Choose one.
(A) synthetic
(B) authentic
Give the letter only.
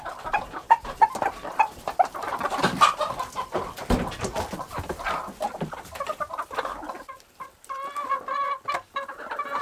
A